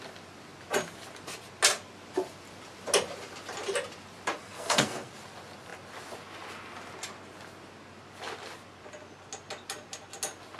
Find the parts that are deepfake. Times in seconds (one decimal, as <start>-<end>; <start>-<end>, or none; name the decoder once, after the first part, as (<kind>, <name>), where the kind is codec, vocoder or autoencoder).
4.4-5.1 (codec, SNAC)